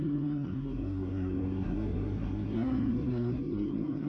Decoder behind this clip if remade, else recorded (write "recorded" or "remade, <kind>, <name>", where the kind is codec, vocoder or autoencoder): remade, codec, SNAC